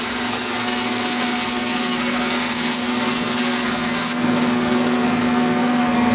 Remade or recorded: remade